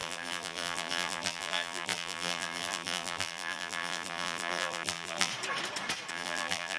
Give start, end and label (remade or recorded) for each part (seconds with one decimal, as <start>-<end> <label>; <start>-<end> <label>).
0.0-5.3 remade; 5.3-6.1 recorded; 6.1-6.8 remade